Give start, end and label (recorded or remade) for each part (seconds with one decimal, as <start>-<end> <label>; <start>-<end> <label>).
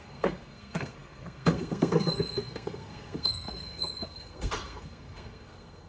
0.0-5.9 remade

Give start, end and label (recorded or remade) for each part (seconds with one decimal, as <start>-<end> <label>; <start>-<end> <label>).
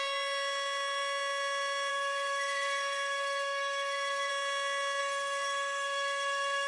0.0-1.9 recorded; 1.9-4.3 remade; 4.3-5.0 recorded; 5.0-6.7 remade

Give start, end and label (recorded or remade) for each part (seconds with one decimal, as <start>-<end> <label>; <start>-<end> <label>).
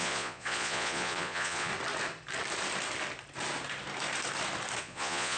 0.0-1.7 remade; 1.7-4.8 recorded; 4.8-5.4 remade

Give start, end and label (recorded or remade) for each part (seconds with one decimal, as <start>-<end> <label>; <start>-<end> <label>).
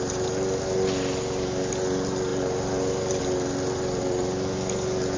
0.0-5.2 recorded